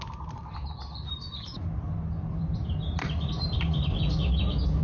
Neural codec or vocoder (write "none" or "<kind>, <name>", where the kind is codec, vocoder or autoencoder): none